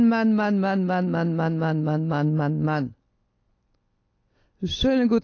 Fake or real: real